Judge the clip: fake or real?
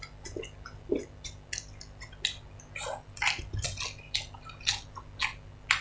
real